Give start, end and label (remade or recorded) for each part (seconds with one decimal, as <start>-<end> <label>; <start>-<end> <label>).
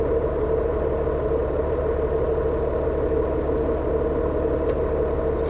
0.0-1.4 recorded; 1.4-1.9 remade; 1.9-5.5 recorded